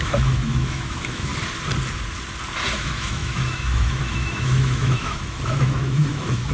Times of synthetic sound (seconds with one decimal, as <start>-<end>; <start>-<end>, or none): 0.0-1.3; 2.7-6.5